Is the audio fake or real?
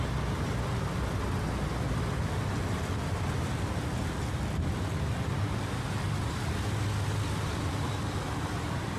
real